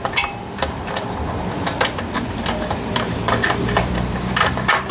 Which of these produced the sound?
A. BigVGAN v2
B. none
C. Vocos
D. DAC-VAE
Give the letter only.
A